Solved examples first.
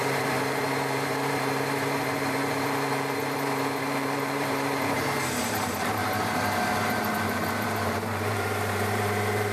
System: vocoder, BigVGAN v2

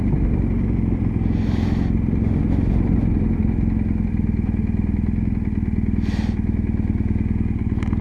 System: none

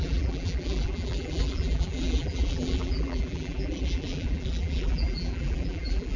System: vocoder, BigVGAN v2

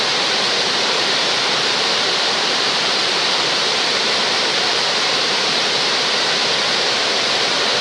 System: vocoder, BigVGAN v2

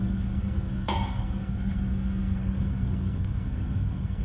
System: codec, SNAC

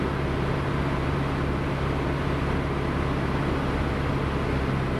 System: none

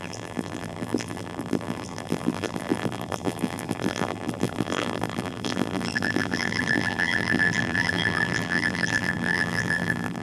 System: vocoder, BigVGAN v2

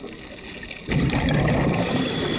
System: none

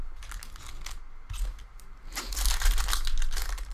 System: none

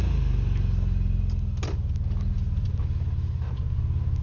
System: none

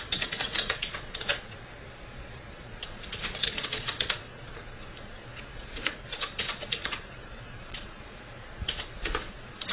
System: vocoder, Vocos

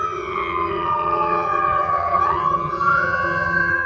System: vocoder, HiFi-GAN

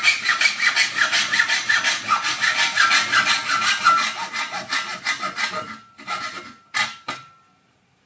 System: none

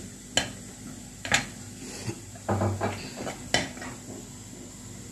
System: none